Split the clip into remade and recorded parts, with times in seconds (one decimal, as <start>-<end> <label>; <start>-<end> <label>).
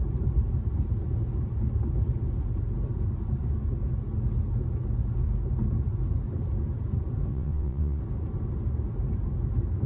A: 0.0-7.3 recorded; 7.3-8.0 remade; 8.0-9.9 recorded